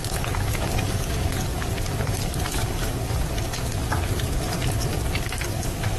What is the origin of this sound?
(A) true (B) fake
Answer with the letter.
B